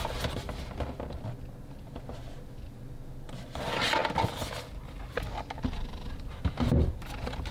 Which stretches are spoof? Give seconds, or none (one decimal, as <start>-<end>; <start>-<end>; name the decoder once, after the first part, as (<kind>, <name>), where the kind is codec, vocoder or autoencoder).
none